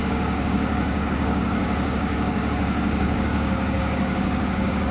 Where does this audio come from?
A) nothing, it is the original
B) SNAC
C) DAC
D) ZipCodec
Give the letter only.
C